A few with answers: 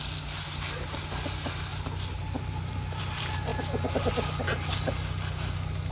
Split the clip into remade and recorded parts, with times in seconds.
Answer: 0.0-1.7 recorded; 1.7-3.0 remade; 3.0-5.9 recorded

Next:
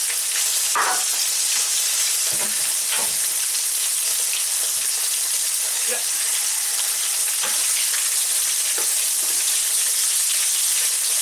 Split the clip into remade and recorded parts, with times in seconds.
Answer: 0.0-5.9 recorded; 5.9-7.7 remade; 7.7-11.2 recorded

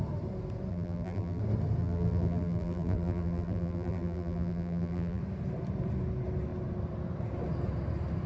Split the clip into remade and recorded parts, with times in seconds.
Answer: 0.0-0.7 recorded; 0.7-1.4 remade; 1.4-1.8 recorded; 1.8-5.2 remade; 5.2-8.3 recorded

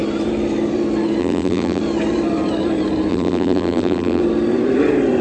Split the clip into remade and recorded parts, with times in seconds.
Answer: 0.0-1.2 recorded; 1.2-1.8 remade; 1.8-3.1 recorded; 3.1-4.2 remade; 4.2-5.2 recorded

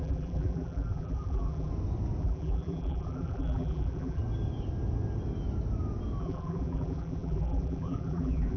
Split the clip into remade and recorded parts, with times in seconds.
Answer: 0.0-1.7 remade; 1.7-2.2 recorded; 2.2-4.2 remade; 4.2-6.2 recorded; 6.2-8.6 remade